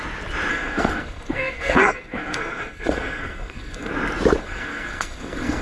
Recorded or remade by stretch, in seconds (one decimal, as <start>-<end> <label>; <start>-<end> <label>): 0.0-0.5 recorded; 0.5-3.9 remade; 3.9-4.4 recorded; 4.4-5.6 remade